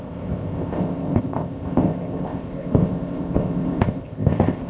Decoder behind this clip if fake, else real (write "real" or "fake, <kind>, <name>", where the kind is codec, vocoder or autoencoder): fake, codec, ZipCodec